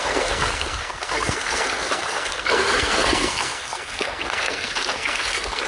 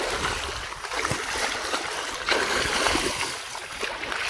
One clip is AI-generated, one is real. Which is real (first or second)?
second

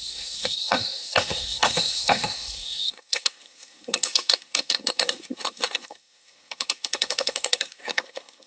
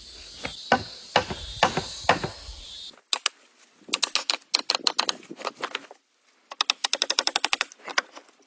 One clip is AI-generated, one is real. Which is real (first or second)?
second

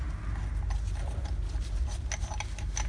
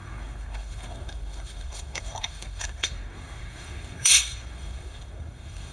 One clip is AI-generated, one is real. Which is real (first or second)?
first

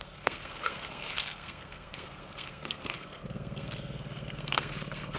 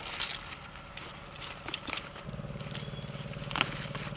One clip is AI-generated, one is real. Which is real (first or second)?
second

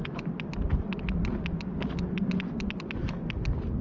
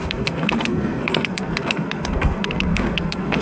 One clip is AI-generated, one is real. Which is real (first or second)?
first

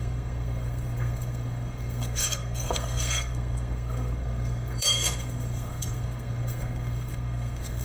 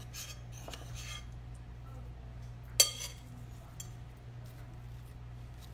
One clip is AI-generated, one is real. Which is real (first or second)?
second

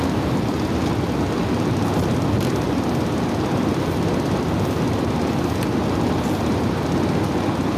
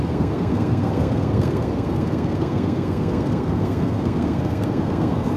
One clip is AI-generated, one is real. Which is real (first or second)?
first